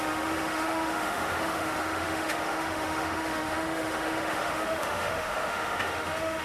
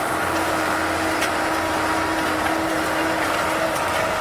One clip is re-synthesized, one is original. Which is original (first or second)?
second